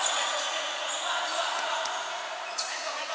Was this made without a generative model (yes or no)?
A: no